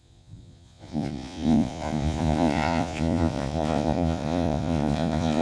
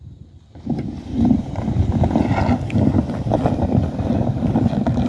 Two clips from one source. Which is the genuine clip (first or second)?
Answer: second